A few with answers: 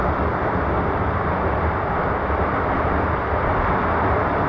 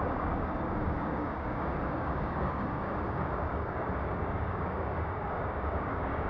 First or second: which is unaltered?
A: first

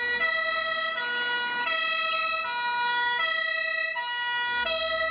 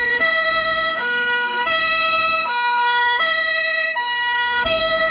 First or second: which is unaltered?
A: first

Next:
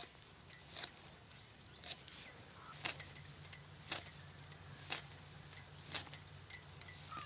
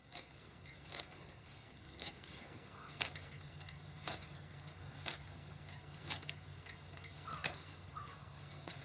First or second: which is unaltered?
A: first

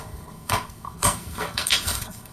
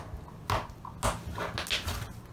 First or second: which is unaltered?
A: second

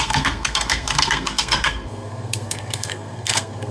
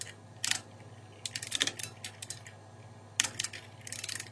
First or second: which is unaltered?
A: second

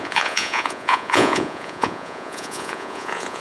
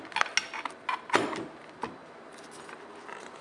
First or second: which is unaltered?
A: second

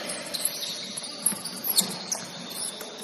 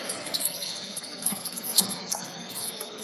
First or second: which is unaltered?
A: first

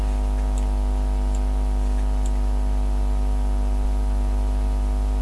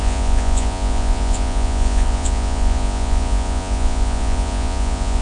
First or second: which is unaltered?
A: first